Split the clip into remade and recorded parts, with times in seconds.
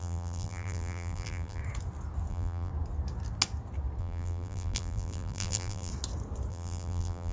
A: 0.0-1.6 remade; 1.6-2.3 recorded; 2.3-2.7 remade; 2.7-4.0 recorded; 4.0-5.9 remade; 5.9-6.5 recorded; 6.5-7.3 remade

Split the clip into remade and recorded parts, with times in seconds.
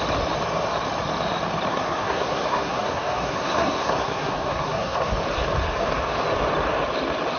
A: 0.0-1.7 recorded; 1.7-5.1 remade; 5.1-7.4 recorded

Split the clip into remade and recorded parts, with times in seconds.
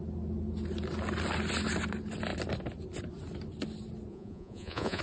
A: 0.0-4.1 recorded; 4.1-5.0 remade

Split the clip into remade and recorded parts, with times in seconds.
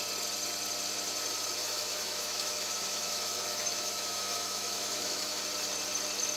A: 0.0-1.6 recorded; 1.6-5.4 remade; 5.4-6.4 recorded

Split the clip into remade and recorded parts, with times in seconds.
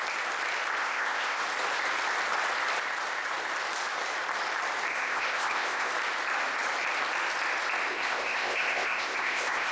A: 0.0-0.8 recorded; 0.8-1.4 remade; 1.4-4.9 recorded; 4.9-5.9 remade; 5.9-7.9 recorded; 7.9-9.7 remade